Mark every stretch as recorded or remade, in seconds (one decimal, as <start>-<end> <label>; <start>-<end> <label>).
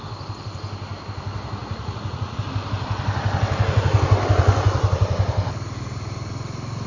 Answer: 0.0-1.6 recorded; 1.6-2.4 remade; 2.4-6.9 recorded